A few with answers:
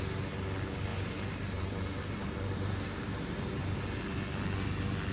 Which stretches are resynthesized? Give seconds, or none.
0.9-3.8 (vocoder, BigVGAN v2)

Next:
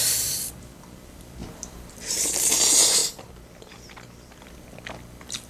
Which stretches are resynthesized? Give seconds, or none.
0.0-3.0 (vocoder, BigVGAN v2); 4.4-5.5

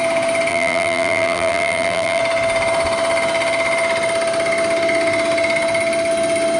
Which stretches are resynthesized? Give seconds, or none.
0.5-2.2 (vocoder, BigVGAN v2)

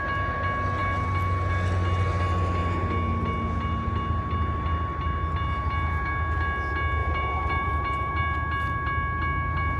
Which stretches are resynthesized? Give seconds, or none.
7.0-8.1 (vocoder, BigVGAN v2)

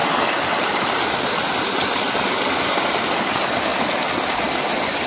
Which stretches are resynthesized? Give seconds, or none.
3.1-3.7 (vocoder, BigVGAN v2); 4.4-5.1

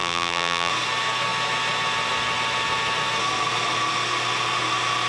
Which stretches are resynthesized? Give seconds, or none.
0.0-0.7 (vocoder, BigVGAN v2)